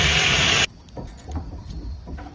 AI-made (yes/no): yes